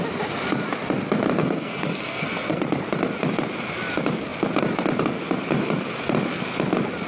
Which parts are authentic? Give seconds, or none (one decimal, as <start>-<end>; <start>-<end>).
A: 0.0-1.4; 2.6-7.1